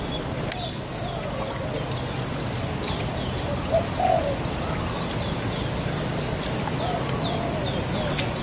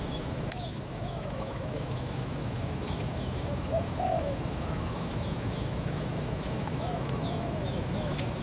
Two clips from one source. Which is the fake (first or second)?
second